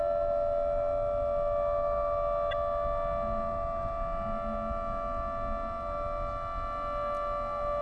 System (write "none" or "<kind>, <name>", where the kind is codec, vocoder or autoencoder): none